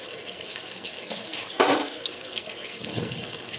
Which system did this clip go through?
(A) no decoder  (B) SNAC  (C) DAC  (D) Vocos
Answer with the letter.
B